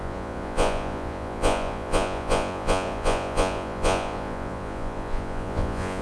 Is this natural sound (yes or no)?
no